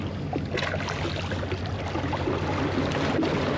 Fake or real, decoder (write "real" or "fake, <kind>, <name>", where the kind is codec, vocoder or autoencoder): real